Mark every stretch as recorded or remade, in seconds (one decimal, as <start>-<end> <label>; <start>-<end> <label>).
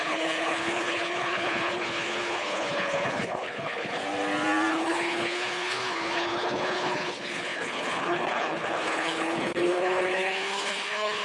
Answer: 0.0-4.0 remade; 4.0-4.7 recorded; 4.7-11.2 remade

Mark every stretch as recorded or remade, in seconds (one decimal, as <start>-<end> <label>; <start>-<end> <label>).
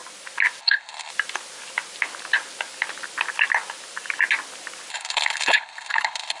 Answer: 0.0-0.6 recorded; 0.6-1.1 remade; 1.1-4.9 recorded; 4.9-6.4 remade